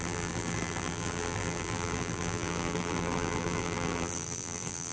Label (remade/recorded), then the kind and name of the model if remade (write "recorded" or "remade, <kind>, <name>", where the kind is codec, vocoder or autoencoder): remade, vocoder, BigVGAN v2